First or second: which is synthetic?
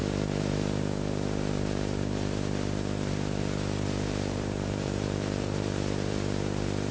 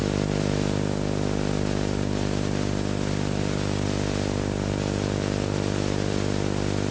first